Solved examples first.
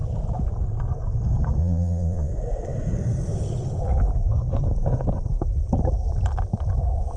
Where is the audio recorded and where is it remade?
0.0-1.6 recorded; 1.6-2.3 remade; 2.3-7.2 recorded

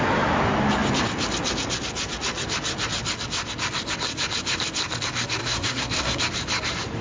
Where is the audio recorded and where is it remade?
0.0-5.4 recorded; 5.4-6.2 remade; 6.2-7.0 recorded

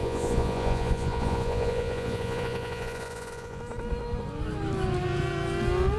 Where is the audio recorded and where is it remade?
0.0-3.6 remade; 3.6-6.0 recorded